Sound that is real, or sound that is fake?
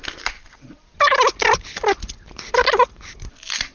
real